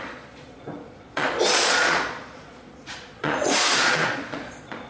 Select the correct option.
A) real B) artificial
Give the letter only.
B